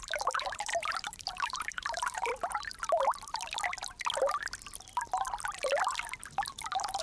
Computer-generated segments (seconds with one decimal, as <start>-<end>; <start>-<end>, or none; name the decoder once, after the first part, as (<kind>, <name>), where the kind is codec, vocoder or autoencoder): 0.0-2.3 (vocoder, BigVGAN v2); 6.5-7.0